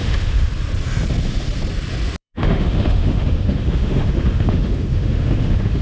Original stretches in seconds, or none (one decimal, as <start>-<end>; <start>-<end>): 0.5-2.2

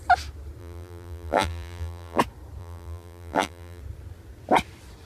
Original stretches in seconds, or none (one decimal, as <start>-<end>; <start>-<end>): 0.0-0.6; 2.2-2.6; 3.8-5.1

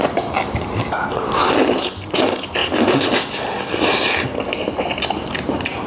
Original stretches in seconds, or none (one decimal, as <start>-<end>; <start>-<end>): 2.6-5.1

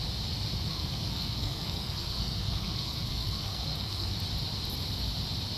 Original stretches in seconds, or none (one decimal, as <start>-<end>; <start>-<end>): 0.0-0.7; 4.1-5.6

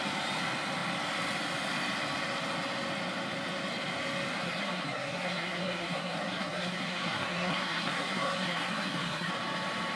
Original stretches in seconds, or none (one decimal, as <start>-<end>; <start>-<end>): 0.0-4.4; 9.3-10.0

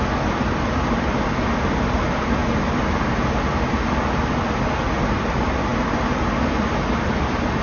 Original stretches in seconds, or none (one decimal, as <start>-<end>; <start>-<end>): 0.0-7.6